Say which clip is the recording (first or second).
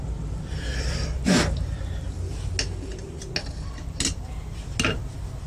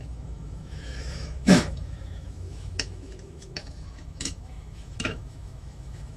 first